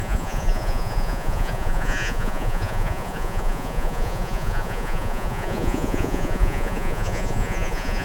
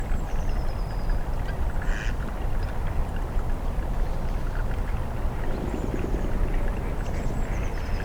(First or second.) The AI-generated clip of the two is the first